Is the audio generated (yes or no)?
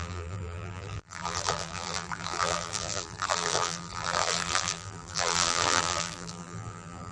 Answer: yes